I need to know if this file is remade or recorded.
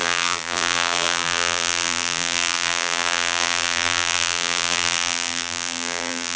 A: remade